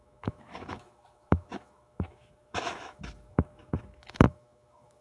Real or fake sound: fake